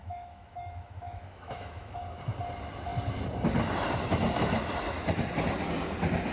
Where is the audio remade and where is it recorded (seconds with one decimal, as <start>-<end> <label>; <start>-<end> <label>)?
0.0-2.0 remade; 2.0-6.3 recorded